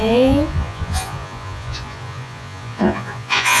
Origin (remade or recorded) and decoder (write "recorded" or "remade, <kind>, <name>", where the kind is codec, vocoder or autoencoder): remade, vocoder, Vocos